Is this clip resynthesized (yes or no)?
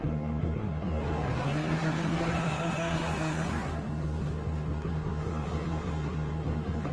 yes